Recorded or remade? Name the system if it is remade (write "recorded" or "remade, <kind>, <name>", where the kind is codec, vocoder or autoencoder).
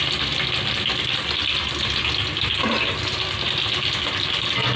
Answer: recorded